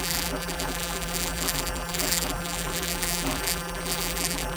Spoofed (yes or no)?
yes